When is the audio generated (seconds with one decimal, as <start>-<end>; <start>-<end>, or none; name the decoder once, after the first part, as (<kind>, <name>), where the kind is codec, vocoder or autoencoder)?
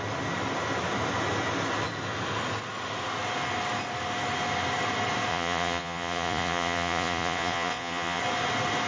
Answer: 5.3-8.2 (vocoder, Vocos)